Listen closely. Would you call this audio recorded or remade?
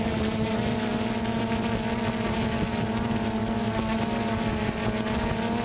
recorded